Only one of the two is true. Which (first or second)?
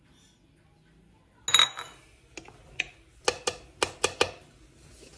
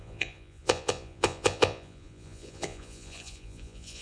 first